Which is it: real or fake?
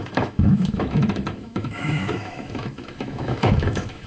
fake